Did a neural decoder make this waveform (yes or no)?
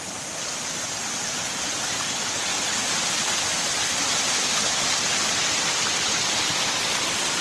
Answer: no